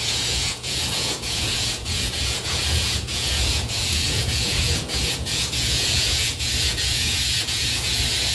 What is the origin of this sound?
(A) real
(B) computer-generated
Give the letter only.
B